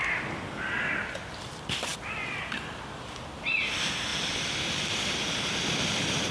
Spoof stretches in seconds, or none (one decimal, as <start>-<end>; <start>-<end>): none